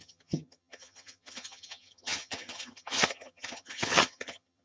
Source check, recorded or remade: remade